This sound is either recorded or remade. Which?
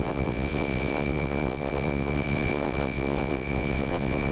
remade